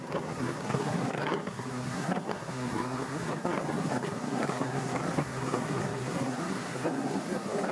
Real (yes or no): no